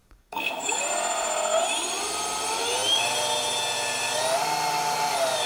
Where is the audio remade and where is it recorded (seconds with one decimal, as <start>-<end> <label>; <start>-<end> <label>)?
0.0-0.8 remade; 0.8-5.5 recorded